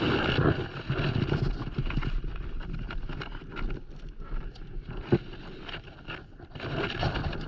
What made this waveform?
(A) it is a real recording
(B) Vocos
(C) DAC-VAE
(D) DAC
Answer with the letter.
A